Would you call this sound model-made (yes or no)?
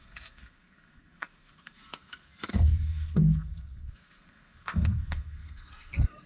yes